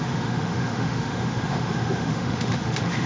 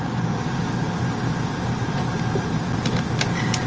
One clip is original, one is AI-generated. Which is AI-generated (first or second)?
first